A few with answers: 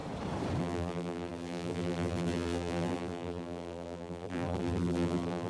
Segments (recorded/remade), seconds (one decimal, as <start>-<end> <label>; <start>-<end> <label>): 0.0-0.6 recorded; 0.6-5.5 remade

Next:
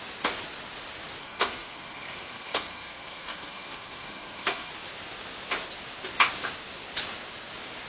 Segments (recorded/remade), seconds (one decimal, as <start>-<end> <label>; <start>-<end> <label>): 0.0-1.2 recorded; 1.2-4.7 remade; 4.7-7.9 recorded

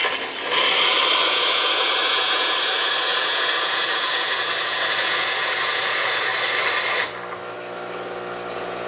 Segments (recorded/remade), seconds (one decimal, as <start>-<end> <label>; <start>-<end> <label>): 0.0-1.3 recorded; 1.3-6.3 remade; 6.3-8.5 recorded; 8.5-8.9 remade

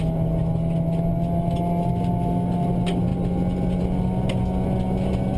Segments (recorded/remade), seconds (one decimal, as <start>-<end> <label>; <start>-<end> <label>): 0.0-5.4 recorded